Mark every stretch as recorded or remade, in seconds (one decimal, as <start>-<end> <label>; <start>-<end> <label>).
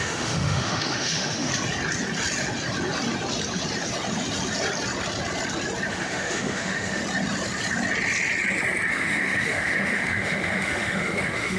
0.0-1.5 remade; 1.5-5.9 recorded; 5.9-7.0 remade; 7.0-8.9 recorded; 8.9-11.6 remade